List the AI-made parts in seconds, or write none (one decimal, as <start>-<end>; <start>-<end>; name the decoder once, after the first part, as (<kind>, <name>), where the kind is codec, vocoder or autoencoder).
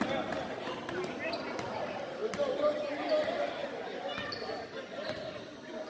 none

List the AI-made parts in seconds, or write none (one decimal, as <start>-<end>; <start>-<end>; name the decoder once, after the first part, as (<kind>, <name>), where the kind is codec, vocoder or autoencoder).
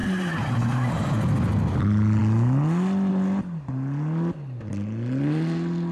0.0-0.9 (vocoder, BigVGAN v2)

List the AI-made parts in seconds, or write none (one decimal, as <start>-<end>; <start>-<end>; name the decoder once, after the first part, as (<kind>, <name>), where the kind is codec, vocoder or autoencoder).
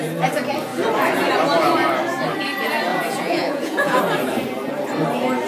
2.9-4.0 (vocoder, Vocos)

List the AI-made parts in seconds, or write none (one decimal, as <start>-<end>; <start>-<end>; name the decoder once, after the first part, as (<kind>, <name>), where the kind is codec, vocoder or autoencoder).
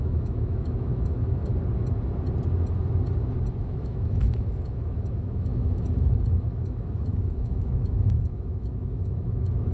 0.0-1.5 (autoencoder, DAC-VAE); 3.6-9.7